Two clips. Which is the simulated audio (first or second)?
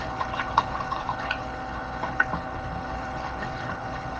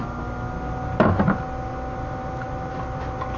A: first